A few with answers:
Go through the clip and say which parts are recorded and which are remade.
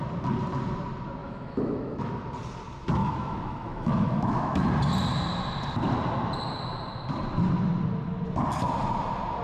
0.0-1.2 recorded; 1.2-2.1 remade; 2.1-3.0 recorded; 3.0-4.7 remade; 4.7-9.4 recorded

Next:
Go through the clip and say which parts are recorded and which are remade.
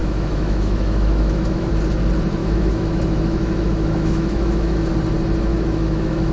0.0-1.7 remade; 1.7-2.4 recorded; 2.4-4.9 remade; 4.9-5.5 recorded; 5.5-6.3 remade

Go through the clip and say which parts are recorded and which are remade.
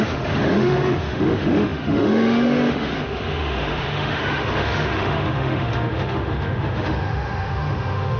0.0-8.2 remade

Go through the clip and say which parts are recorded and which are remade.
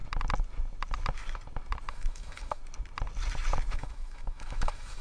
0.0-1.9 recorded; 1.9-2.6 remade; 2.6-3.7 recorded; 3.7-5.0 remade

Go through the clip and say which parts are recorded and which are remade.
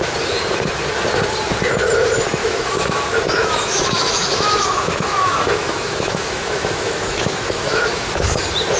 0.0-2.4 recorded; 2.4-3.0 remade; 3.0-3.4 recorded; 3.4-8.4 remade; 8.4-8.8 recorded